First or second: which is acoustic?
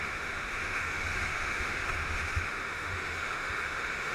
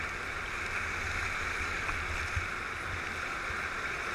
second